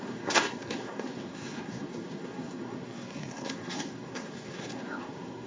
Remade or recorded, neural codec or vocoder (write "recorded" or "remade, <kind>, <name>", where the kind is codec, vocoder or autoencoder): remade, codec, SNAC